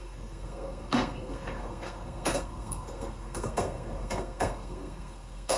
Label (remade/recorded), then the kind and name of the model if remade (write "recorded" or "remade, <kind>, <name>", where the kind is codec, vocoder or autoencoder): remade, codec, SNAC